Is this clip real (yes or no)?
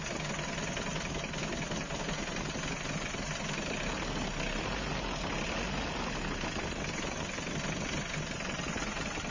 yes